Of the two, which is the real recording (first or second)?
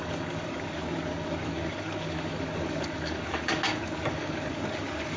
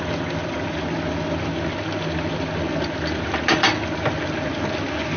second